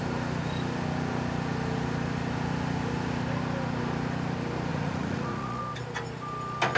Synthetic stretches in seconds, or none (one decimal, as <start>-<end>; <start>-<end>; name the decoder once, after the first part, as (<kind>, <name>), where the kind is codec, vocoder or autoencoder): 4.7-5.6 (vocoder, Vocos)